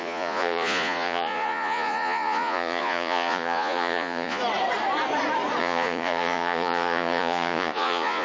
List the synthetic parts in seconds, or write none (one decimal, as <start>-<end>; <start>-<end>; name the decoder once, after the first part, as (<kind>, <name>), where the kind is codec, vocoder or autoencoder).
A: 0.0-4.4 (vocoder, Vocos); 5.6-8.2